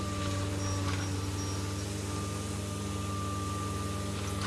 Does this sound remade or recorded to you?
recorded